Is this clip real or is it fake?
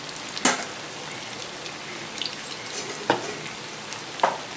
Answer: real